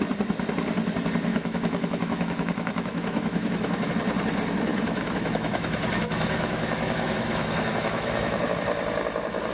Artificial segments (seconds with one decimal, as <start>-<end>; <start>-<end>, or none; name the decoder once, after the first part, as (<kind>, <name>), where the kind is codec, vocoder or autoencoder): 1.3-3.9 (autoencoder, DAC-VAE); 4.7-8.4